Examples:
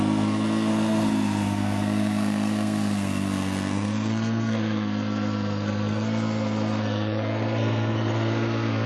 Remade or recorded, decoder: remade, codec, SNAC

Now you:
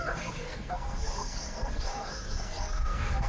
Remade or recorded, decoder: remade, codec, SNAC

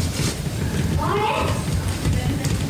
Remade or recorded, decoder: recorded